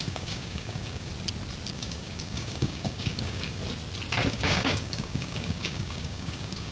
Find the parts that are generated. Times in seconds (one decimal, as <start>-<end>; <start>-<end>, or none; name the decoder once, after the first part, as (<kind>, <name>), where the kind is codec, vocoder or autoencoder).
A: 0.0-1.1 (codec, DAC); 1.7-3.6; 4.3-6.7